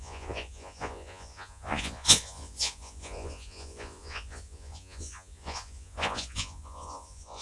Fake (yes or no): yes